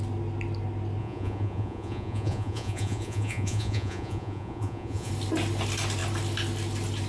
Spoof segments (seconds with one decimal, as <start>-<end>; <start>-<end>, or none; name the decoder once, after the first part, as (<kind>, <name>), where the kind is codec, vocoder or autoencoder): 1.0-5.1 (vocoder, Vocos)